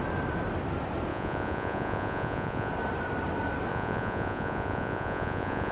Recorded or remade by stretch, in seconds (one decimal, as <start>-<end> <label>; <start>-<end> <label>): 0.0-1.1 recorded; 1.1-2.7 remade; 2.7-3.7 recorded; 3.7-5.7 remade